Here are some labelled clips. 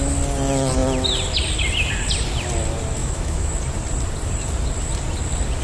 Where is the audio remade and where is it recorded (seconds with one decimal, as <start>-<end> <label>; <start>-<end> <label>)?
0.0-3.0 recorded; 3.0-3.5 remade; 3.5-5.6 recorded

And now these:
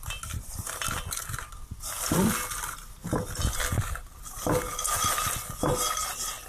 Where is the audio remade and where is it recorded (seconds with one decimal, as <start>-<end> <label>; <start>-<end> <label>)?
0.0-6.5 recorded

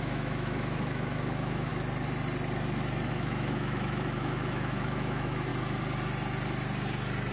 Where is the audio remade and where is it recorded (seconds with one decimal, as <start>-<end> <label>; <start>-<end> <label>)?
0.0-1.7 remade; 1.7-3.1 recorded; 3.1-5.5 remade; 5.5-7.3 recorded